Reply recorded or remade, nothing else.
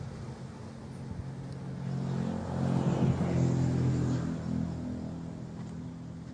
recorded